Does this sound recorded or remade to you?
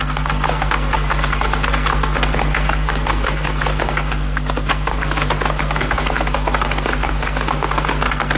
remade